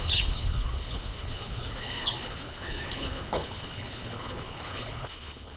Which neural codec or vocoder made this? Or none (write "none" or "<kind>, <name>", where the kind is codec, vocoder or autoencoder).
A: codec, HILCodec